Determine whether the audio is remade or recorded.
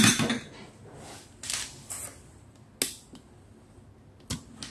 recorded